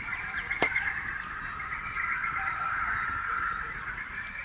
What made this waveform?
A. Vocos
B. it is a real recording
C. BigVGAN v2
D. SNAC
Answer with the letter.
C